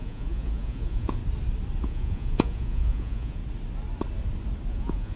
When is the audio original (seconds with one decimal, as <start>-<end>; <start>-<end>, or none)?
1.2-1.8; 3.4-4.7